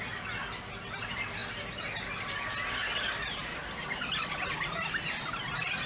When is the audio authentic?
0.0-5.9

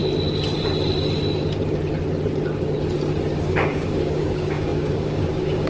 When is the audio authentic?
0.0-3.4

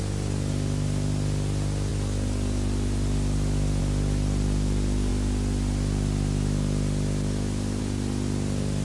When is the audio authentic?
0.0-8.8

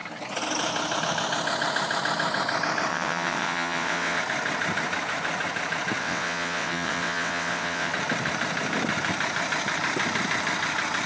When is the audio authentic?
0.0-2.9; 4.2-6.0; 7.9-11.1

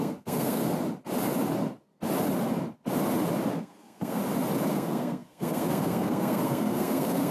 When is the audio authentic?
0.6-3.5; 4.2-4.7

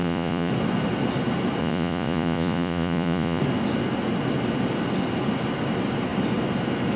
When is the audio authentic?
0.5-1.6; 3.4-7.0

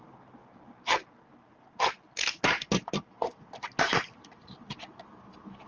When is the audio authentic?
0.0-5.7

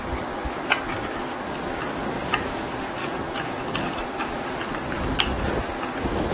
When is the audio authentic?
0.0-3.0; 3.6-6.3